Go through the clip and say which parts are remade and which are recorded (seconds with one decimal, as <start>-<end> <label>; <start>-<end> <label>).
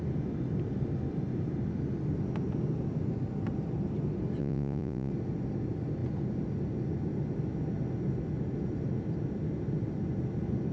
0.0-4.4 recorded; 4.4-5.1 remade; 5.1-10.7 recorded